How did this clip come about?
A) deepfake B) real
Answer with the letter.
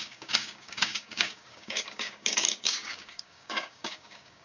A